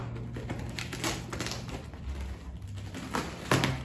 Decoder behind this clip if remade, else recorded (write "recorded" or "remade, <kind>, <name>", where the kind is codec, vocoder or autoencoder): recorded